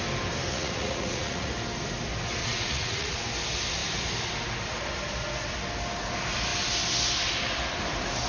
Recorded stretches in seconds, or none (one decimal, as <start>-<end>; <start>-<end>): 0.0-0.5; 1.5-2.4; 3.2-8.3